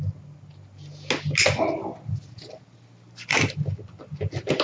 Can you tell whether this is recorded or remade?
recorded